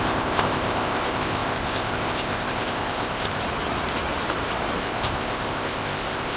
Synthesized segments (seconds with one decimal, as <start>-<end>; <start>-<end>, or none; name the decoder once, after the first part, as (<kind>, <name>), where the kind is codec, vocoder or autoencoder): 0.0-3.4 (codec, ZipCodec); 4.8-6.4